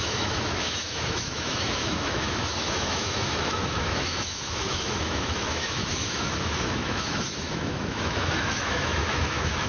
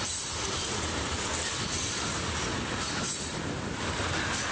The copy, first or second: first